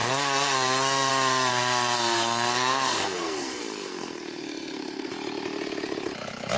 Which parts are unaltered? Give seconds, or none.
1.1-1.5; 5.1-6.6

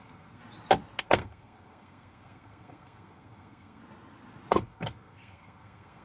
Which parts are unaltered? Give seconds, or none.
0.4-1.0; 3.8-4.5

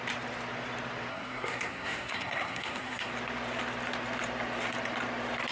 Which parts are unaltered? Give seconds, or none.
0.0-1.1; 3.1-5.5

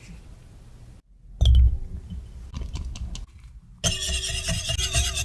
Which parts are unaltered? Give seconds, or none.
0.0-5.2

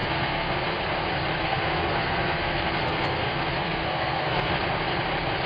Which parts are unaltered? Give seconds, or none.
0.8-1.4; 4.5-5.5